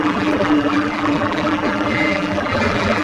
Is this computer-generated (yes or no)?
yes